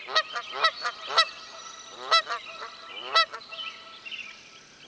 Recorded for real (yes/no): yes